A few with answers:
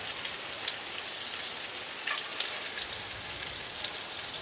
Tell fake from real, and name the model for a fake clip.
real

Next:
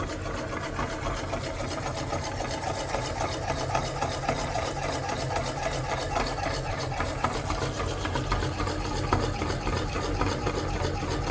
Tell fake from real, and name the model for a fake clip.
real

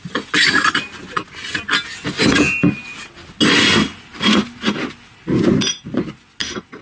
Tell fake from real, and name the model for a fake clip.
real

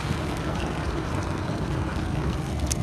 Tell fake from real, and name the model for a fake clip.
fake, codec, SNAC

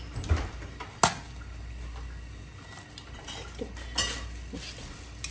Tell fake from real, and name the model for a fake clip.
real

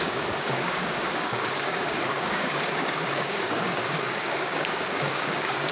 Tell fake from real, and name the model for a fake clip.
fake, codec, DAC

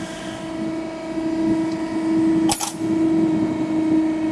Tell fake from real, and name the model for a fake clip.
real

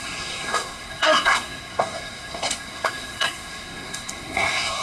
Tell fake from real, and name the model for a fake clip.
fake, codec, SNAC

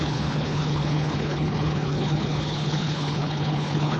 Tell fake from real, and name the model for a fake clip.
fake, codec, HILCodec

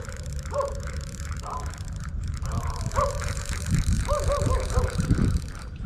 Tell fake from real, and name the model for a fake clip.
fake, vocoder, BigVGAN v2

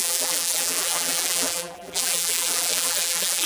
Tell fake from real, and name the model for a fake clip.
fake, vocoder, BigVGAN v2